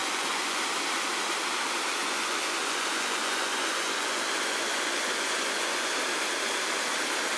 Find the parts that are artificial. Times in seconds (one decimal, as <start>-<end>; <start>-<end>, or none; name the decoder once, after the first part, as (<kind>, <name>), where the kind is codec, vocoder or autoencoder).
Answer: 0.0-0.6 (vocoder, Vocos); 2.0-5.9